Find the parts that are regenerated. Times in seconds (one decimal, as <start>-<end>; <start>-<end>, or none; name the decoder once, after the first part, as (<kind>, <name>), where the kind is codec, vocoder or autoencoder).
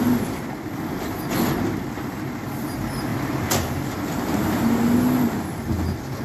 none